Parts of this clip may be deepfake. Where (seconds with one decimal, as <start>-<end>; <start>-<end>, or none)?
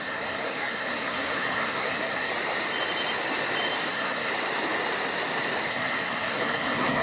0.0-2.3; 3.9-4.3; 5.7-7.0